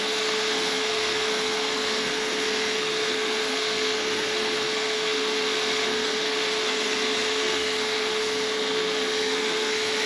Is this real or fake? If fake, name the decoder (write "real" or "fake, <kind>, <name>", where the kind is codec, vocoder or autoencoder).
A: fake, codec, SNAC